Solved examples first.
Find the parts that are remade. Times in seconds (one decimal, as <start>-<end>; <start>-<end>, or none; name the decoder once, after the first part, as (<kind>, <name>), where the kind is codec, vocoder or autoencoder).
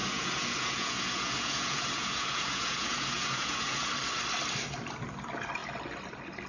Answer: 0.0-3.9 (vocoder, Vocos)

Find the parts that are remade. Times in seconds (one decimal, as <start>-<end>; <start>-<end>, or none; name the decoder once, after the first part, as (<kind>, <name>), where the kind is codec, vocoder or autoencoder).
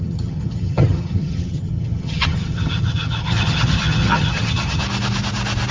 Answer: 0.0-4.8 (vocoder, HiFi-GAN)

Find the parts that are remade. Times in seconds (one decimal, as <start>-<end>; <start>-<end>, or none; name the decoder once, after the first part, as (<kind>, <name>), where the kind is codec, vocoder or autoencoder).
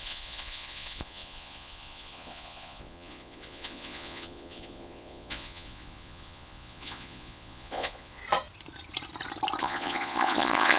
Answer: 0.0-8.2 (vocoder, Vocos); 9.6-10.8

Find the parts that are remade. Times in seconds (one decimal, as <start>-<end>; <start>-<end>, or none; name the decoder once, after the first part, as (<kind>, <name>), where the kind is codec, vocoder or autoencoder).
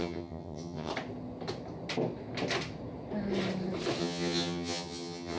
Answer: 0.0-0.9 (vocoder, HiFi-GAN); 4.0-5.4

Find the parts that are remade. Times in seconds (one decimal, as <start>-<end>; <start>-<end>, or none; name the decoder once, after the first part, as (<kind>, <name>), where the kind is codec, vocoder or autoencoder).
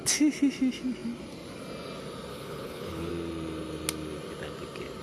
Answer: 2.3-3.1 (codec, HILCodec)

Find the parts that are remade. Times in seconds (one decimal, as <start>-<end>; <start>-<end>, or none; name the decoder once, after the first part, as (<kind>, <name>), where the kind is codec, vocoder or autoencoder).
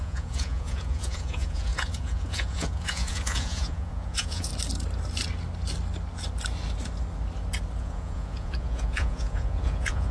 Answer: 0.0-4.5 (vocoder, Vocos); 7.8-10.1